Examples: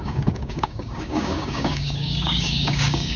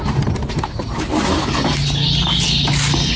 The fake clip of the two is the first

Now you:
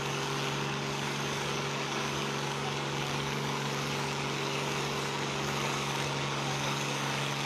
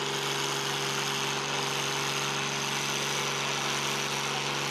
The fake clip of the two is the first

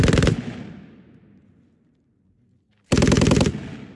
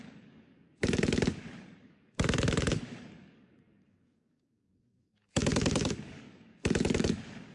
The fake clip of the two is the second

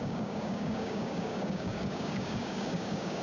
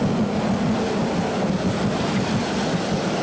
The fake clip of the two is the first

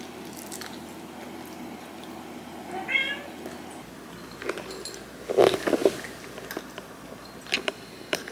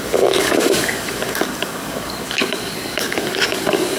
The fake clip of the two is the second